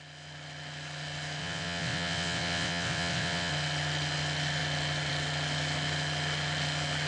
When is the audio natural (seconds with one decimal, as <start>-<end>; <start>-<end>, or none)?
0.0-1.4; 3.5-7.1